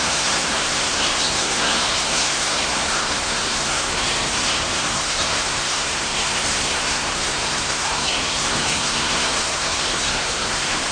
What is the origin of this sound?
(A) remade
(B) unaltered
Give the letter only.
A